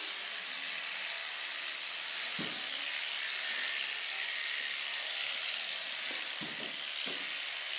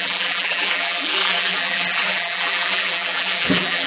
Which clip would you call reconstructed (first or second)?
second